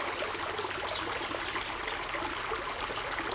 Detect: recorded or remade recorded